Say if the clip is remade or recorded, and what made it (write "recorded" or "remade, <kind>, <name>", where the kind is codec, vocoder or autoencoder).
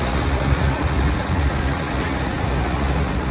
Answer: remade, vocoder, Vocos